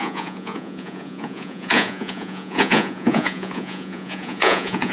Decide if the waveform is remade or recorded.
remade